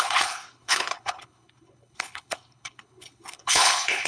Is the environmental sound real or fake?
fake